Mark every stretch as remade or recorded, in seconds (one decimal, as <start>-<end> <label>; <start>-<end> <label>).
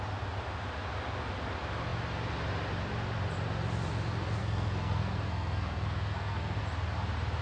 0.0-4.4 recorded; 4.4-6.6 remade; 6.6-7.4 recorded